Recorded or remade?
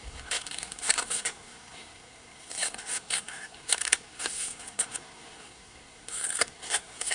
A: remade